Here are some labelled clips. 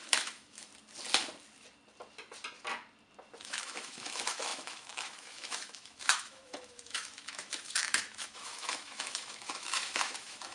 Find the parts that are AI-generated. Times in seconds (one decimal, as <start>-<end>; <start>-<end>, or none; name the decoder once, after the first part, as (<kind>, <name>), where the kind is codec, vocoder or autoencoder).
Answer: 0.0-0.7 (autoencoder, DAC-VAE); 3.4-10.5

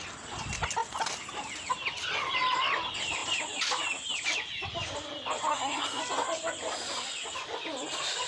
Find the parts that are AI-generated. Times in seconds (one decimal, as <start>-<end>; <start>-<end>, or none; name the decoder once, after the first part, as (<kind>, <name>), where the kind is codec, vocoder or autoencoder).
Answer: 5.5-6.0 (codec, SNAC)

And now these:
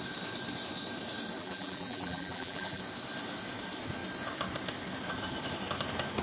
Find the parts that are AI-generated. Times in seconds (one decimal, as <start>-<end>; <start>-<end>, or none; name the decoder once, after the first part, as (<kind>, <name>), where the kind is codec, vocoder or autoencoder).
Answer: 1.4-2.8 (vocoder, BigVGAN v2)

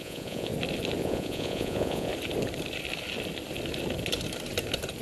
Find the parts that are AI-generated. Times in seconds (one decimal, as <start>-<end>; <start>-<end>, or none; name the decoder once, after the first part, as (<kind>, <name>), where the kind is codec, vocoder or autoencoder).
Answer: 0.0-0.5 (vocoder, Vocos); 1.0-2.1

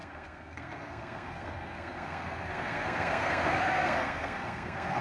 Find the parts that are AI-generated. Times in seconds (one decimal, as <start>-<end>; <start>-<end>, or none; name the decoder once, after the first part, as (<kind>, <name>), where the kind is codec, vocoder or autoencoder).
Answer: 0.0-5.0 (codec, SNAC)